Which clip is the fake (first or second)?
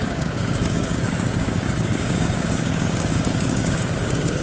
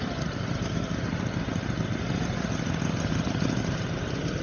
first